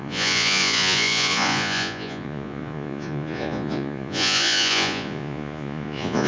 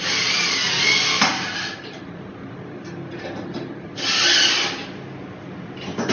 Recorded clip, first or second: second